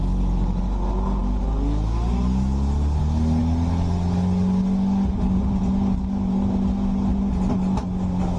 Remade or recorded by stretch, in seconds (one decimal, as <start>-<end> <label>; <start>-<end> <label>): 0.0-8.4 recorded